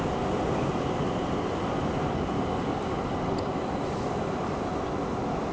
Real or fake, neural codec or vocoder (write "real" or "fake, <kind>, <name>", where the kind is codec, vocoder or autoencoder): real